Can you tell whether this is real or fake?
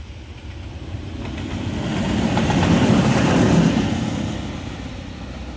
real